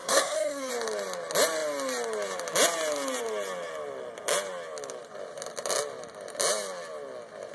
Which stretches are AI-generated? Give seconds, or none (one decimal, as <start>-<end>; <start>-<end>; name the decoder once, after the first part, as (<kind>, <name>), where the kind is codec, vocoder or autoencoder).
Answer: 0.0-0.7 (codec, SNAC)